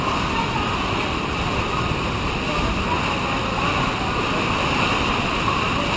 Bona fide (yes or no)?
yes